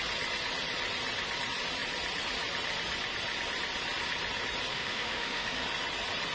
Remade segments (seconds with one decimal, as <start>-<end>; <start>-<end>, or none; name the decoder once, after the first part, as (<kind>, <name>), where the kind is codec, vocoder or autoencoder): 4.7-5.6 (autoencoder, DAC-VAE)